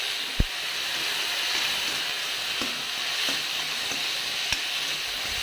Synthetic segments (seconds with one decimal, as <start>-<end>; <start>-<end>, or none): none